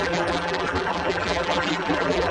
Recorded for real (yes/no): no